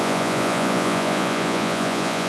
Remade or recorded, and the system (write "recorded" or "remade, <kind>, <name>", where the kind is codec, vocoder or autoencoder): remade, vocoder, Vocos